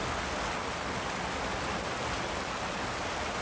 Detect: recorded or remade recorded